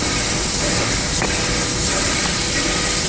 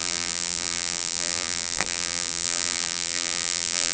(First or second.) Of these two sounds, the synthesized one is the second